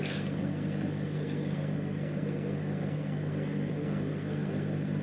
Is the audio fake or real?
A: fake